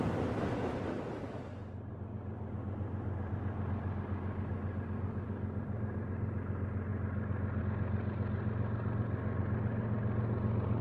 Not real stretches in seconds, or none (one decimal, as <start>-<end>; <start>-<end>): none